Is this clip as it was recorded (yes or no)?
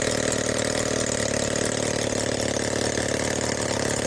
yes